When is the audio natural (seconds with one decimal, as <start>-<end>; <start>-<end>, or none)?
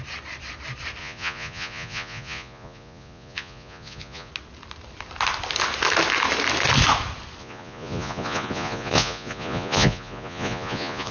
0.0-1.0; 4.3-7.4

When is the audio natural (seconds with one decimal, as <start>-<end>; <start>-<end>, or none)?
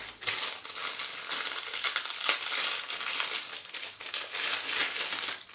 0.0-5.5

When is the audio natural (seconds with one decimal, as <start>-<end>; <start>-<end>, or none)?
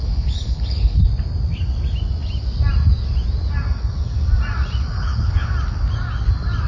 1.0-4.9; 5.5-6.7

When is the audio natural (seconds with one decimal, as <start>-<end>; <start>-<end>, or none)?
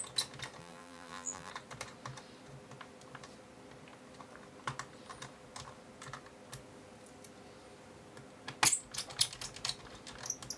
0.0-0.6; 1.5-10.6